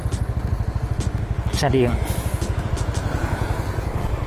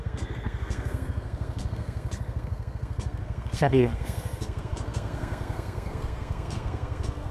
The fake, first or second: second